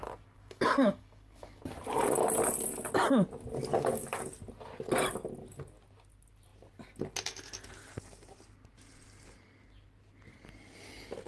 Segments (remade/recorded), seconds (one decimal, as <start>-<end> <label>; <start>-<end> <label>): 0.0-1.6 remade; 1.6-3.7 recorded; 3.7-4.2 remade; 4.2-11.3 recorded